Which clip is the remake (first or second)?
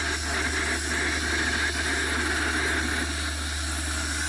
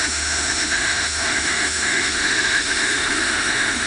second